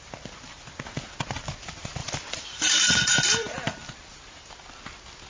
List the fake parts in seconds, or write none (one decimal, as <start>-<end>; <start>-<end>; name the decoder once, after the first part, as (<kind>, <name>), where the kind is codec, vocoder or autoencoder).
2.0-3.9 (vocoder, BigVGAN v2)